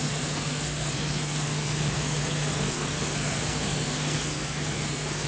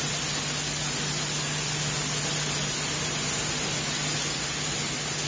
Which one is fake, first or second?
first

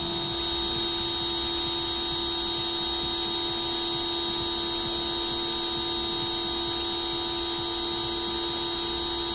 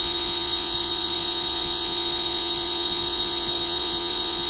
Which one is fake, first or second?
second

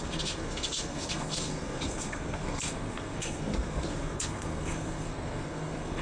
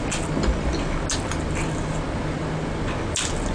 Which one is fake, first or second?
first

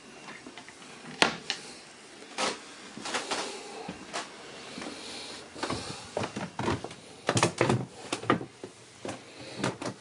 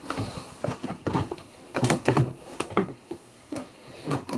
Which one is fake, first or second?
second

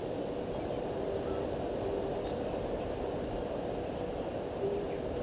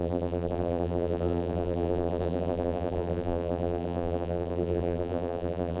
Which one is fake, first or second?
second